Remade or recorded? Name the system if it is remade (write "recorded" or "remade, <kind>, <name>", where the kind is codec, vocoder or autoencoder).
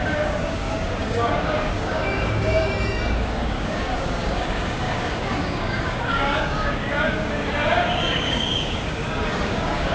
remade, codec, DAC